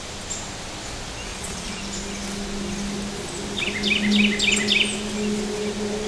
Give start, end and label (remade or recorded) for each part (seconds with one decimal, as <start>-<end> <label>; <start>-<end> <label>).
0.0-1.3 recorded; 1.3-1.8 remade; 1.8-6.1 recorded